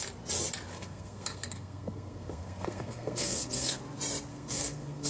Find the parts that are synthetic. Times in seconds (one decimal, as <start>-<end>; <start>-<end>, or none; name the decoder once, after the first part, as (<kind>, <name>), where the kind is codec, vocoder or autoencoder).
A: 0.7-3.8 (codec, SNAC); 4.3-5.1